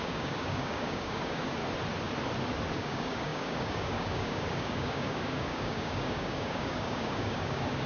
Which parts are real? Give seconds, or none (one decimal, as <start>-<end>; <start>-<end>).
1.6-2.7